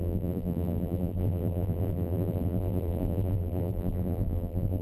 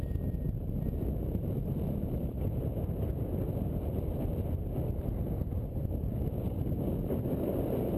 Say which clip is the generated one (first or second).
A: first